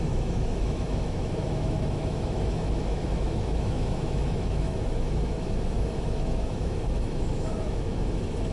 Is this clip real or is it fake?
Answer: fake